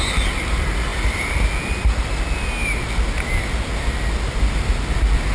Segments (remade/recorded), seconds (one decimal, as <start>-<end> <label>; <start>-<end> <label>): 0.0-5.3 recorded